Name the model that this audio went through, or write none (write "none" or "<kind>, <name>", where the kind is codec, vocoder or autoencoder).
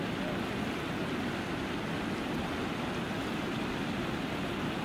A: none